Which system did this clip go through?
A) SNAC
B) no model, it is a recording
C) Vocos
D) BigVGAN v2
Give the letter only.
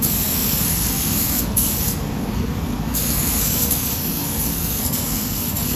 A